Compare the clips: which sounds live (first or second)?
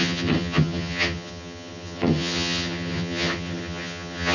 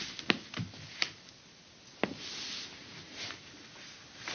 second